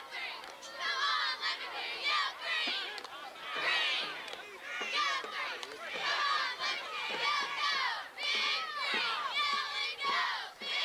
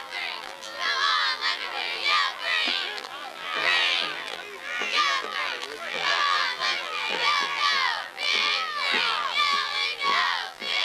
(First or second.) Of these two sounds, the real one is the first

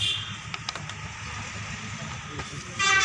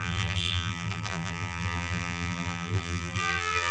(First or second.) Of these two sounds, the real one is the first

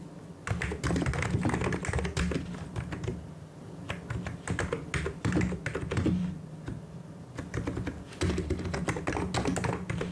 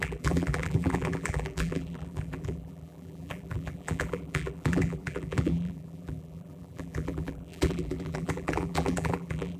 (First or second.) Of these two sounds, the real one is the first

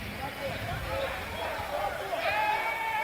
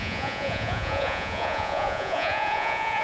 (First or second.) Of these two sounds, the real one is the first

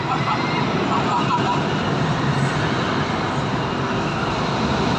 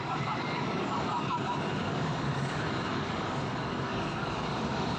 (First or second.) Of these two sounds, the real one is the first